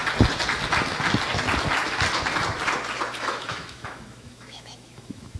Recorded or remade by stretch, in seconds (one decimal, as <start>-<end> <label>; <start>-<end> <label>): 0.0-3.2 recorded; 3.2-5.4 remade